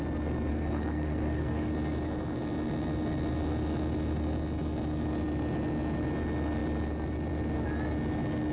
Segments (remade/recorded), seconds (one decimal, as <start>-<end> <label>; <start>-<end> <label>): 0.0-0.5 recorded; 0.5-1.7 remade; 1.7-8.5 recorded